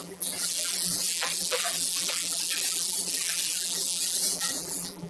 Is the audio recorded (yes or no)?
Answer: no